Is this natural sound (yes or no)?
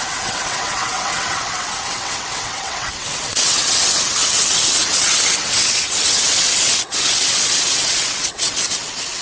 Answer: no